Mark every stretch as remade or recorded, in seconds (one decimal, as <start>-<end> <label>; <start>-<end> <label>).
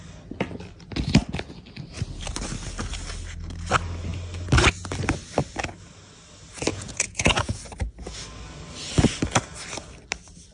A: 0.0-6.7 recorded; 6.7-7.6 remade; 7.6-10.5 recorded